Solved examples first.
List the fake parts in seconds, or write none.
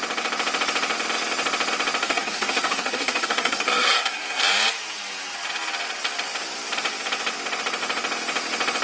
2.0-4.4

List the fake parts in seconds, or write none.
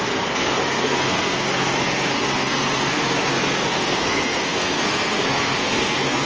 0.0-6.3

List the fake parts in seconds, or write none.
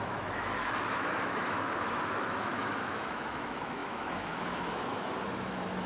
0.0-5.9